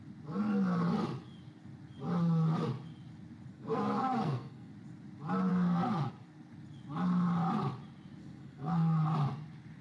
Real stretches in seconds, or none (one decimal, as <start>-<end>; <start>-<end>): 0.0-3.5; 4.7-5.5; 6.1-8.2; 9.0-9.8